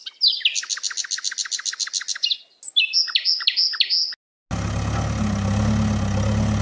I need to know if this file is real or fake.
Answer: real